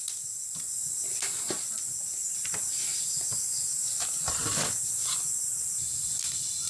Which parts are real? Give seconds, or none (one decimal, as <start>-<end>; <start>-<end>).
0.0-6.7